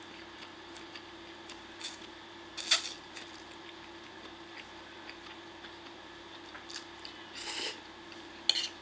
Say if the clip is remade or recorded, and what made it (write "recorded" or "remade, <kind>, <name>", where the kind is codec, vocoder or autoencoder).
recorded